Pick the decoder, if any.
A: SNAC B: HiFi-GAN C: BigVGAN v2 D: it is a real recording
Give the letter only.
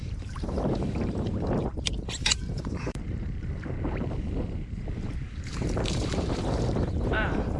C